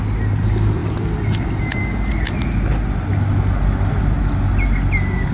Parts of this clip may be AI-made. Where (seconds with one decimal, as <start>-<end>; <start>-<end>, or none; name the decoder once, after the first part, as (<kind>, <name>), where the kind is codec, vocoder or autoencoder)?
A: none